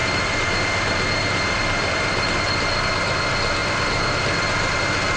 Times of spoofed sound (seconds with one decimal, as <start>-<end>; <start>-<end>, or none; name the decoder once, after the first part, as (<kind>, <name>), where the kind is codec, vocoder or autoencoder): 0.0-2.4 (vocoder, BigVGAN v2)